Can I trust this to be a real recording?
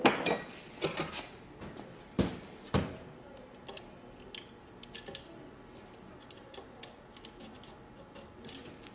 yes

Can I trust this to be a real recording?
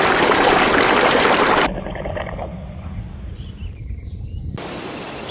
yes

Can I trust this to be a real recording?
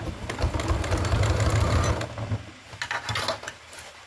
yes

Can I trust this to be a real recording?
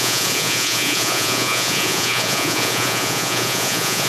no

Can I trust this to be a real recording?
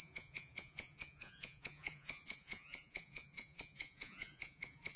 no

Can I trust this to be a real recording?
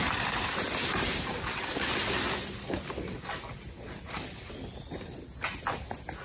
yes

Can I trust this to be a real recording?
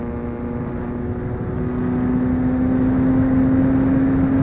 yes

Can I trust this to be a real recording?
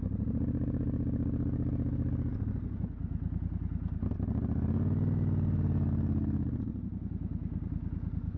yes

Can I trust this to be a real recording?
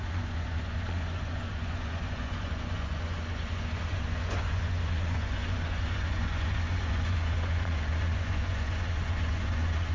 no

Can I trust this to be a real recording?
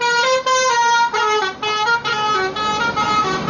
yes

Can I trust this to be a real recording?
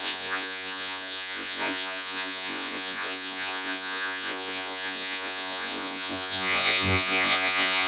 no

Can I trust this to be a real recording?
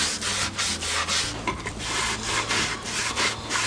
yes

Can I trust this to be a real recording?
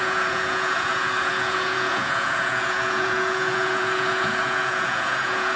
no